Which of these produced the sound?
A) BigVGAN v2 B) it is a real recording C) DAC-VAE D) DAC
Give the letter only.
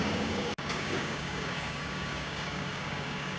D